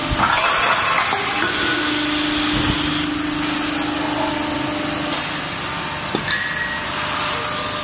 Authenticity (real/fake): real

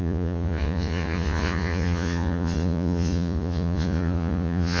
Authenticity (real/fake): fake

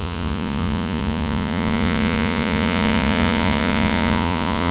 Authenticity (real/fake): fake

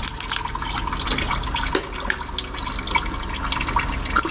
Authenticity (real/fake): real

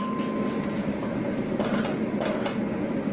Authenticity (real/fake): real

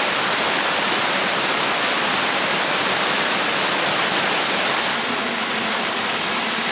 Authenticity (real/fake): real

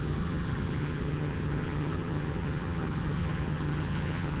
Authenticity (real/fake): fake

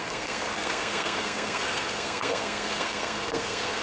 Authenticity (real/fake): fake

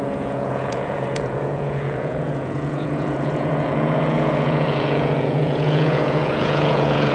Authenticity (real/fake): fake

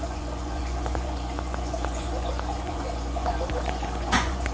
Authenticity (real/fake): fake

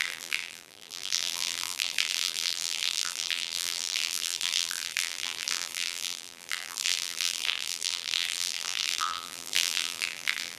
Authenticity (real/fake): fake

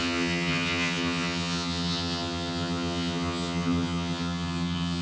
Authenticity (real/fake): fake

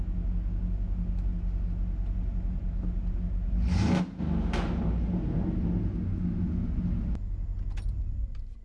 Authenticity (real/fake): real